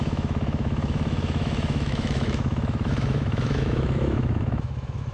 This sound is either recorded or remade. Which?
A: remade